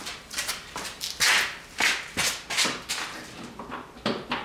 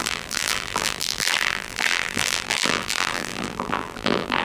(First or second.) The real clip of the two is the first